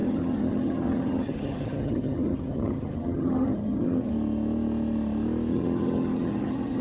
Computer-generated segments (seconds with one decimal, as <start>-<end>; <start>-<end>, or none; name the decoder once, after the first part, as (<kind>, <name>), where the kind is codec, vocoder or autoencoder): 0.0-4.1 (vocoder, HiFi-GAN); 5.5-6.8